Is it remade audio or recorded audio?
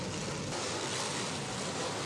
recorded